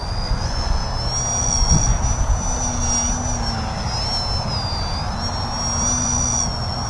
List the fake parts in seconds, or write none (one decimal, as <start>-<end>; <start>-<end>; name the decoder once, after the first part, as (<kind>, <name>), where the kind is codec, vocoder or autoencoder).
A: 0.0-0.8 (vocoder, Vocos); 1.4-1.9; 6.0-6.9